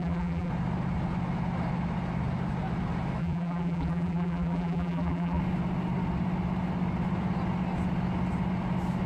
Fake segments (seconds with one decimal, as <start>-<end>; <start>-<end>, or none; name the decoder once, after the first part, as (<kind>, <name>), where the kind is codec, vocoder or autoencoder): 0.0-0.5 (vocoder, BigVGAN v2); 3.2-5.4